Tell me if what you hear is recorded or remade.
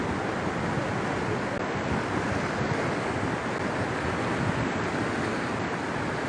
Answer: recorded